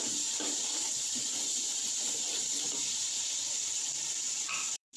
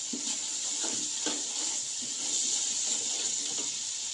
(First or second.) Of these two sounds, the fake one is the first